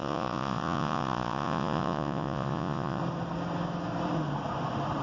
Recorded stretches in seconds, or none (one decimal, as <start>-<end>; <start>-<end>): 3.0-5.0